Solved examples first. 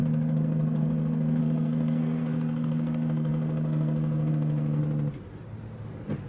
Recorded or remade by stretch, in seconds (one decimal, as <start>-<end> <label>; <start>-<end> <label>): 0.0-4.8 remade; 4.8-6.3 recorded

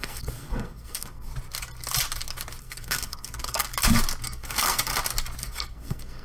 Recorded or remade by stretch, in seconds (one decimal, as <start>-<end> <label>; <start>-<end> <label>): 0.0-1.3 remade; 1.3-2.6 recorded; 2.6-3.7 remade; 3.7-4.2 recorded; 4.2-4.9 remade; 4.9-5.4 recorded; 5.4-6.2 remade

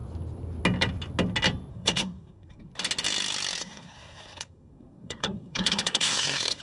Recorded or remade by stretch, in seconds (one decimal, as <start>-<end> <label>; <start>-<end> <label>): 0.0-1.7 recorded; 1.7-2.7 remade; 2.7-3.6 recorded; 3.6-6.6 remade

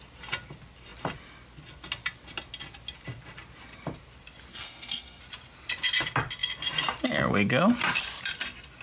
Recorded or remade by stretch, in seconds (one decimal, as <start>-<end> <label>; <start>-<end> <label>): 0.0-4.5 recorded; 4.5-5.2 remade; 5.2-8.8 recorded

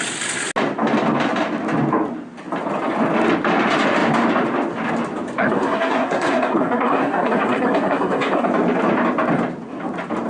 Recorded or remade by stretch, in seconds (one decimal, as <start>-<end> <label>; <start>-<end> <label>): 0.0-5.4 recorded; 5.4-8.5 remade; 8.5-10.3 recorded

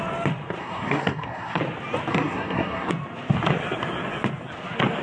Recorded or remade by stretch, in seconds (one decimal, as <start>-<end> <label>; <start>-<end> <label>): 0.0-0.6 recorded; 0.6-1.6 remade; 1.6-2.1 recorded; 2.1-2.9 remade; 2.9-5.0 recorded